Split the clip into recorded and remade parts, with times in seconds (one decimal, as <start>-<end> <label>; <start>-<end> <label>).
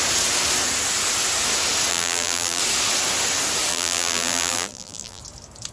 0.0-1.9 recorded; 1.9-2.6 remade; 2.6-3.7 recorded; 3.7-5.2 remade; 5.2-5.7 recorded